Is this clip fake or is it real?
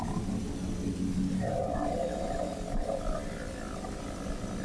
real